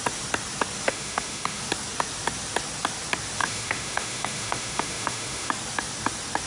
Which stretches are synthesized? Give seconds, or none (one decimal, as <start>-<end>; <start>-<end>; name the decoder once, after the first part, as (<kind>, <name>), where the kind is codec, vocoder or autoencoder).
0.9-1.6 (autoencoder, DAC-VAE); 3.4-5.5